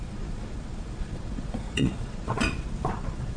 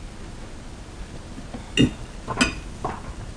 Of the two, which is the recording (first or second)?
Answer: second